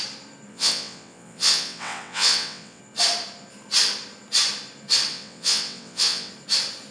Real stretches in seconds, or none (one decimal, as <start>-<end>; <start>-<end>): 0.0-0.5; 2.8-5.1; 6.3-6.9